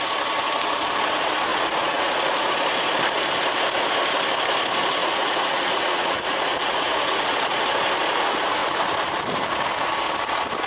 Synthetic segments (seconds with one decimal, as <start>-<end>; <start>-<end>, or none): 1.5-2.5; 5.0-7.6